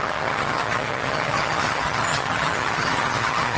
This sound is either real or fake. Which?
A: fake